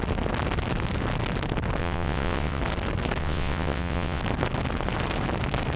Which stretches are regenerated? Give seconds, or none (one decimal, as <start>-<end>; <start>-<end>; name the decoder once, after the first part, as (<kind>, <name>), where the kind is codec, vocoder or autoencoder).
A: 1.8-2.6 (vocoder, WaveNeXt); 3.2-4.2